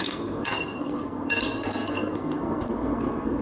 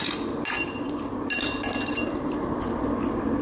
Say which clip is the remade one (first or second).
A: first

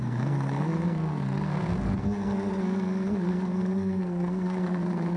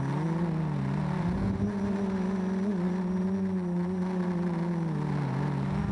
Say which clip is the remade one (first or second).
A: first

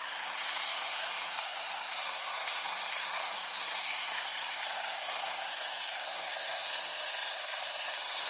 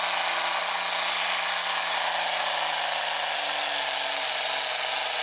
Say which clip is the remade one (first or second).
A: first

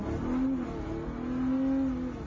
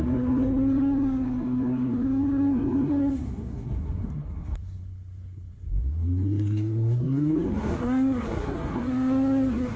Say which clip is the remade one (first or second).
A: second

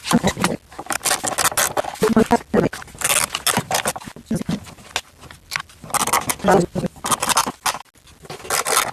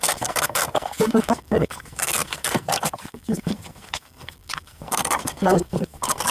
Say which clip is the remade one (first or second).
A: second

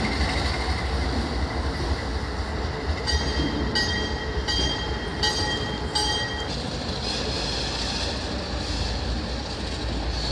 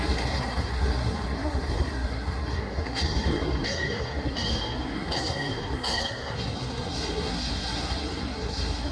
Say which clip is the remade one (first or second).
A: second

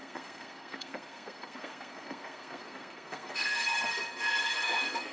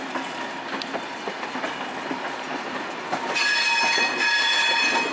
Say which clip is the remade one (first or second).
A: first